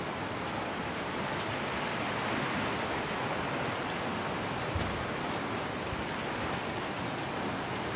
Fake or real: real